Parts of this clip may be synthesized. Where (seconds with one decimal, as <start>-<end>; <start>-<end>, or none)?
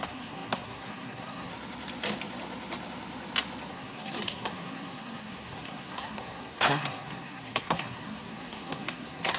0.0-1.5; 3.7-9.4